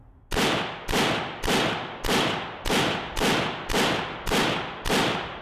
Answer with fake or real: real